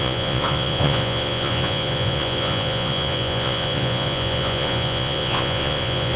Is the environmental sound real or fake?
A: fake